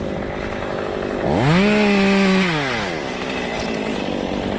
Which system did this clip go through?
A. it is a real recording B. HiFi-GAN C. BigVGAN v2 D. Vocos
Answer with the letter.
A